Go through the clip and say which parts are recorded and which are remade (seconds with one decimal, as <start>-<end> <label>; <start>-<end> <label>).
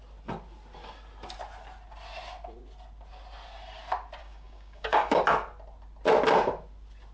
0.0-4.2 recorded; 4.2-5.2 remade; 5.2-7.1 recorded